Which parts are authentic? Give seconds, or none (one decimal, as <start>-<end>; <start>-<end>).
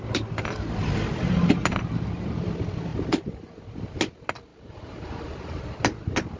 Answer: 0.0-1.6; 2.4-2.9; 3.6-4.5; 5.6-6.4